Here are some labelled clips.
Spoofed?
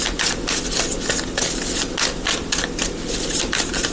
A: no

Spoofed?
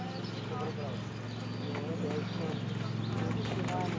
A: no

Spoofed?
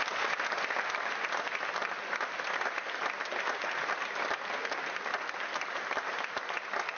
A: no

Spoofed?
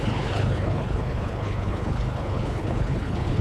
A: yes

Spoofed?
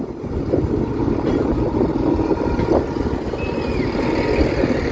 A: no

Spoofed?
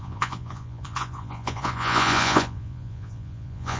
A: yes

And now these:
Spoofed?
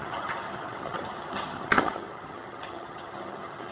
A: yes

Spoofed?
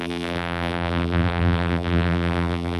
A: yes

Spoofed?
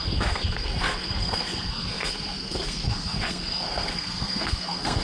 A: yes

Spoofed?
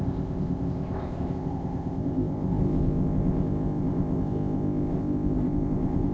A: yes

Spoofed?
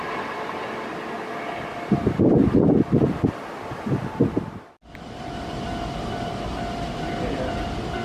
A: no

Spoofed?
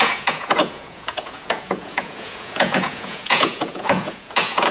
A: yes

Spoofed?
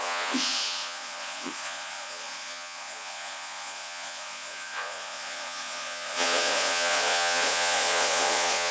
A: yes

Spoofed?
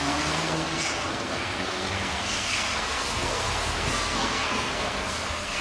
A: yes